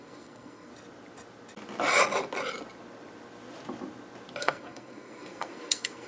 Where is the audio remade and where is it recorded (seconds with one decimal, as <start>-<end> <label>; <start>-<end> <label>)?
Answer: 0.0-0.7 remade; 0.7-4.4 recorded; 4.4-6.1 remade